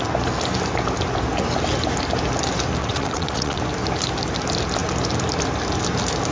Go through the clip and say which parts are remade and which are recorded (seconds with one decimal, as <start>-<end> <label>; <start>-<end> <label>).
0.0-2.8 recorded; 2.8-3.6 remade; 3.6-6.3 recorded